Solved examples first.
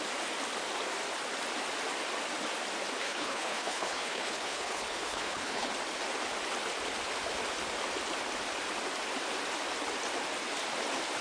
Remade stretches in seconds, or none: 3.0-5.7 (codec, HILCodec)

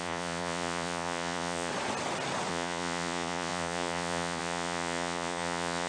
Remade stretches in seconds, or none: 0.0-1.7 (vocoder, Vocos); 2.5-5.9

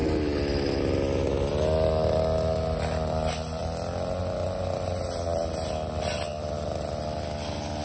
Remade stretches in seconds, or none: none

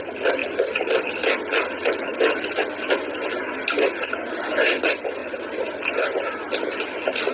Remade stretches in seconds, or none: none